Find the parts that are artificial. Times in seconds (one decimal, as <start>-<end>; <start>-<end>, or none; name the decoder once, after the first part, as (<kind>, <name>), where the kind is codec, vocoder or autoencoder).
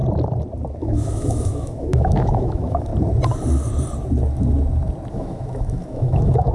0.8-2.9 (autoencoder, DAC-VAE); 5.1-6.5